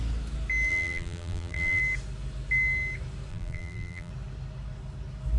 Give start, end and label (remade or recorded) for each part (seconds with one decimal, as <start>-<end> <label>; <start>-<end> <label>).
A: 0.0-0.7 recorded; 0.7-1.8 remade; 1.8-3.3 recorded; 3.3-4.1 remade; 4.1-5.4 recorded